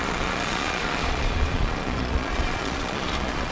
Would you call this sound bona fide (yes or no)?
no